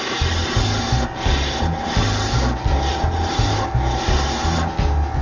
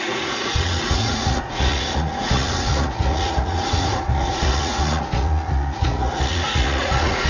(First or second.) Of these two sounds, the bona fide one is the first